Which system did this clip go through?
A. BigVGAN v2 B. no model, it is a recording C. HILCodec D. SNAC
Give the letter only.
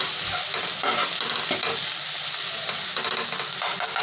B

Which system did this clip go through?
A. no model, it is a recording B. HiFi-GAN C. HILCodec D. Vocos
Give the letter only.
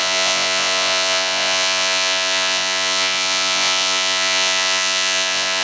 D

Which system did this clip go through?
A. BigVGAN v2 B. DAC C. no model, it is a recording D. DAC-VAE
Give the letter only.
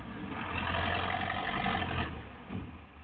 C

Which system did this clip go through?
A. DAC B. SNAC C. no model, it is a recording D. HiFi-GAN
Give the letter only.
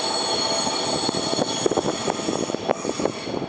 C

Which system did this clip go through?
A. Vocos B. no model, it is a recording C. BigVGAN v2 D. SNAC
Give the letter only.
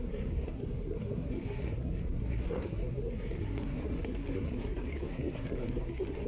D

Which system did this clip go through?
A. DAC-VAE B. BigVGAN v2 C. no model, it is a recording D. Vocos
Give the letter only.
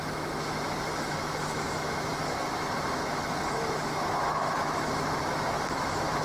A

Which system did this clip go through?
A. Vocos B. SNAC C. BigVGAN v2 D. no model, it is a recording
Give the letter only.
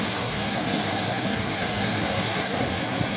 B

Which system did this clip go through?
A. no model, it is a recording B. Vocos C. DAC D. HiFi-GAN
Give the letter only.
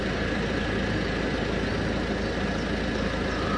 A